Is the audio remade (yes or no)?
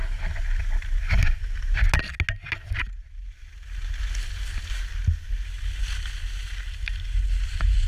no